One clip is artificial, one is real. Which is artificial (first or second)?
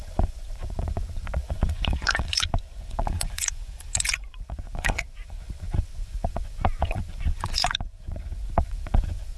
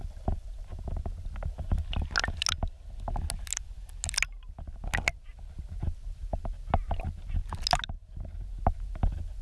first